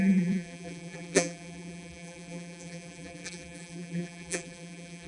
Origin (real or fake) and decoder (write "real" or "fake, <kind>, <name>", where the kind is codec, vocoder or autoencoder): fake, vocoder, BigVGAN v2